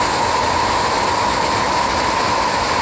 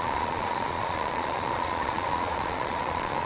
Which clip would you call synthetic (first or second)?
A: second